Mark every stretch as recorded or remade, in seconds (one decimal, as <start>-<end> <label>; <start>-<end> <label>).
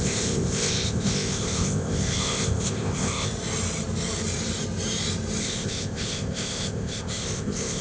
0.0-3.3 remade; 3.3-5.4 recorded; 5.4-7.8 remade